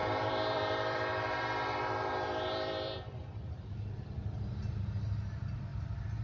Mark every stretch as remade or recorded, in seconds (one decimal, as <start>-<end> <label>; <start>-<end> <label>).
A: 0.0-6.2 remade